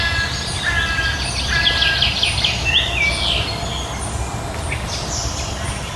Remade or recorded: recorded